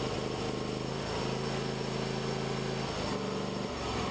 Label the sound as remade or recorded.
recorded